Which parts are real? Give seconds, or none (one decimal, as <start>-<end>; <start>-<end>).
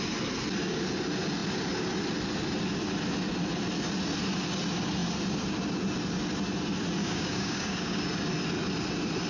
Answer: 0.0-7.0; 8.0-9.3